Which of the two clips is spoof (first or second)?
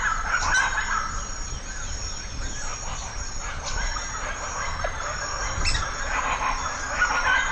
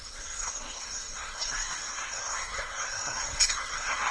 second